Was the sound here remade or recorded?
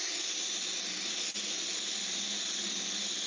recorded